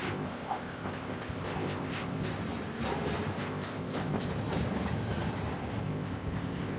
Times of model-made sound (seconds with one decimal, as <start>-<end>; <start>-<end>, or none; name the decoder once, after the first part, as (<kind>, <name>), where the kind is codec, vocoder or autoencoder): 0.0-2.3 (codec, ZipCodec); 3.4-4.3; 5.8-6.8